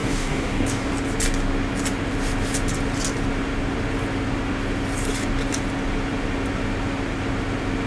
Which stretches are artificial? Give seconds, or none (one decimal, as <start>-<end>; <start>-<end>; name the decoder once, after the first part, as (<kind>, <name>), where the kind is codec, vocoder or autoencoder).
0.0-0.9 (codec, DAC)